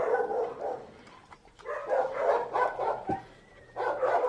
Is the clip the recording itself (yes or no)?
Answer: no